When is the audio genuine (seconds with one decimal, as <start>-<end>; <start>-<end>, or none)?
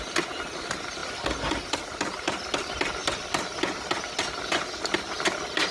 0.0-5.7